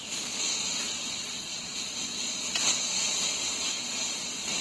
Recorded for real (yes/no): no